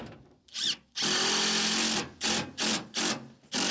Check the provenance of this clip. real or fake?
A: real